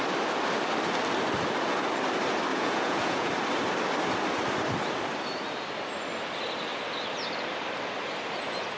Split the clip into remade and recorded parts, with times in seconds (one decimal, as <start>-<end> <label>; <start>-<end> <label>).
0.0-2.5 recorded; 2.5-3.3 remade; 3.3-8.8 recorded